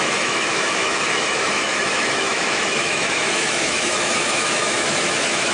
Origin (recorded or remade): remade